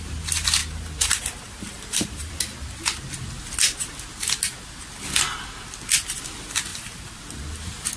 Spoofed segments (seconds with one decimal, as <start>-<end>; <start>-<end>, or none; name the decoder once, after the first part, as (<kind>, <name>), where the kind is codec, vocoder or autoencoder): 0.6-2.3 (vocoder, BigVGAN v2); 6.7-7.2